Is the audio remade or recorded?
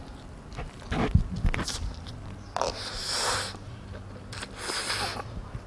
recorded